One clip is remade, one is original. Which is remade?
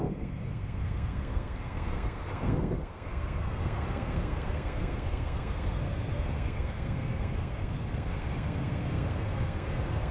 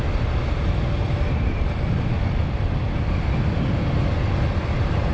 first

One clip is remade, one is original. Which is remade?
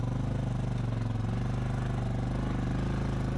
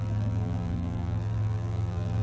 second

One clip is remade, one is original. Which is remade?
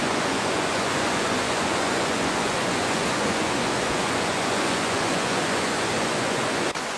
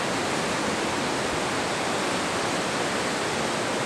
first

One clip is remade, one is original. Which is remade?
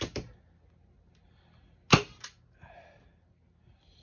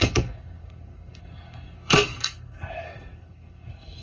second